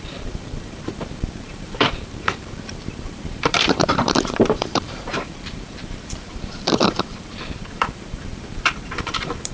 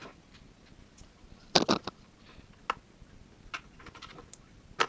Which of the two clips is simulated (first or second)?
first